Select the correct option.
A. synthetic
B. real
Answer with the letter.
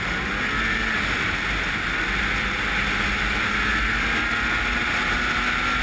B